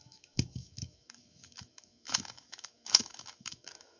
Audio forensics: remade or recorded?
remade